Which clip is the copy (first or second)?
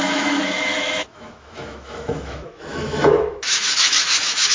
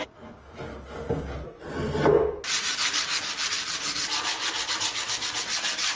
first